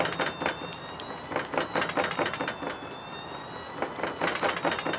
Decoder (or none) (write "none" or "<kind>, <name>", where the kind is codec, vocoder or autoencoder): none